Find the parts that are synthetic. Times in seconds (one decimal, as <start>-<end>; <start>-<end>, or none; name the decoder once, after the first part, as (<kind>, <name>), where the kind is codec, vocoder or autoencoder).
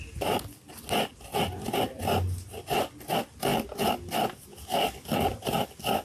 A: none